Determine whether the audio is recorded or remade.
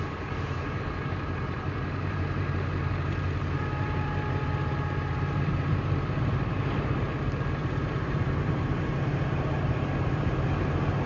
remade